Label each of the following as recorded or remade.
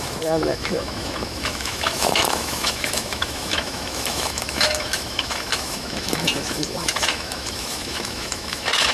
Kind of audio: remade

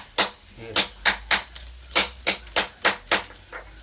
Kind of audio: recorded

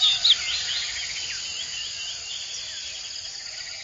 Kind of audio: recorded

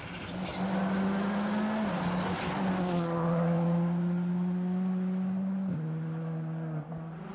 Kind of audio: recorded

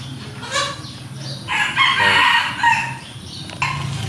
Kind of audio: recorded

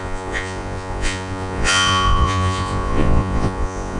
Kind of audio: remade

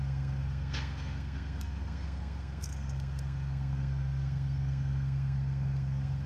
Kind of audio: remade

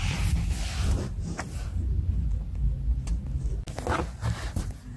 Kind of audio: recorded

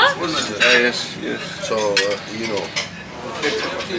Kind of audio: recorded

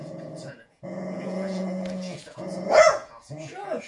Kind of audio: remade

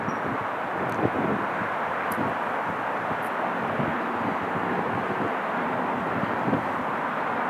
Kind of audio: recorded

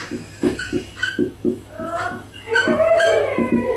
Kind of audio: remade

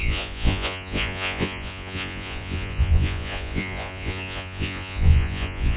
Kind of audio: remade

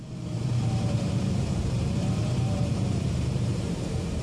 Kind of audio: remade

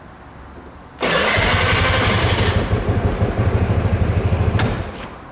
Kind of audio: recorded